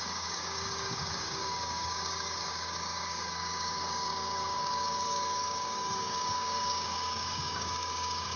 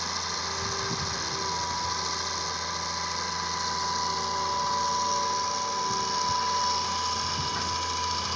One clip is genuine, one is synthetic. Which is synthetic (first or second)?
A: first